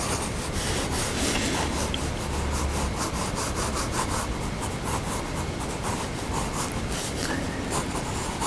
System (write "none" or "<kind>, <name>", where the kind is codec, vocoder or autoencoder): none